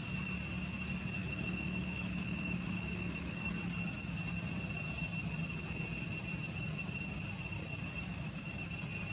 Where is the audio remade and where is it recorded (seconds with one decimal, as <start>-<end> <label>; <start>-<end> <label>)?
0.0-1.2 recorded; 1.2-3.5 remade; 3.5-8.1 recorded; 8.1-8.7 remade; 8.7-9.1 recorded